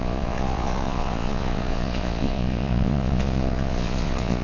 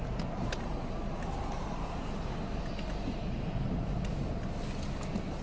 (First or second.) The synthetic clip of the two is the first